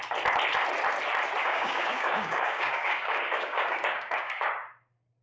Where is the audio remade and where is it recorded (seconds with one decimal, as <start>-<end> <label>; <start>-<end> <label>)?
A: 0.0-1.4 recorded; 1.4-4.5 remade; 4.5-5.2 recorded